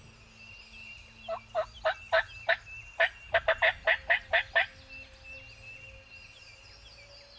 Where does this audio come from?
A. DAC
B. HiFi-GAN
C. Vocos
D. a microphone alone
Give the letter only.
D